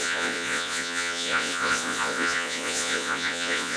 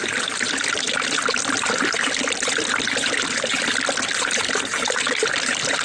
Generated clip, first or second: first